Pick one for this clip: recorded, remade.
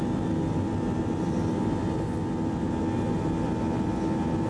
recorded